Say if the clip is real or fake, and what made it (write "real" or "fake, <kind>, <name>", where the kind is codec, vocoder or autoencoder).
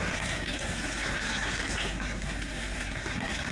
fake, codec, SNAC